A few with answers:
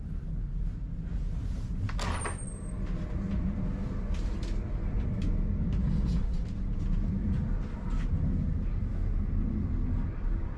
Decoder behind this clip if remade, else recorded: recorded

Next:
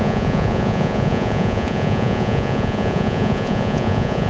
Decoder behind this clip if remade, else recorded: remade, vocoder, Vocos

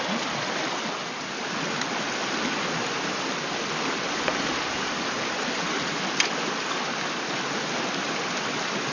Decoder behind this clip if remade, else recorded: recorded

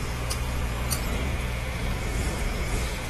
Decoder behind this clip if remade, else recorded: remade, vocoder, Vocos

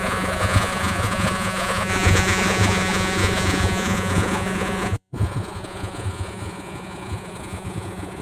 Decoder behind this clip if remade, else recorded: remade, vocoder, Vocos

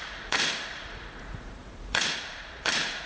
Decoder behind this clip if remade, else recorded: remade, vocoder, Vocos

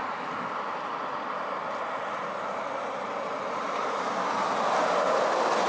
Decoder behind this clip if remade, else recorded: recorded